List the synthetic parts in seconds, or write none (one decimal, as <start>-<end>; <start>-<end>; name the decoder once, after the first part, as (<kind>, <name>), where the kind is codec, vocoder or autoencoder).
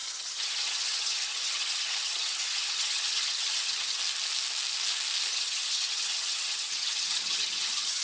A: 0.0-4.0 (vocoder, HiFi-GAN); 5.3-8.0